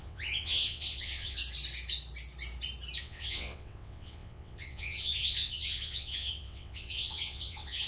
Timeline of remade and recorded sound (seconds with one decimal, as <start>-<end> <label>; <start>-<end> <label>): 0.0-1.4 remade; 1.4-3.0 recorded; 3.0-7.9 remade